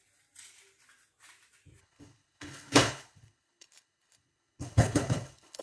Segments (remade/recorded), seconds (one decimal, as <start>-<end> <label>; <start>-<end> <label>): 0.0-1.8 recorded; 1.8-5.6 remade